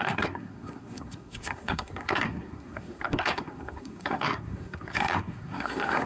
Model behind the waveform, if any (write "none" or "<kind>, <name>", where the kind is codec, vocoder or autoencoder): codec, SNAC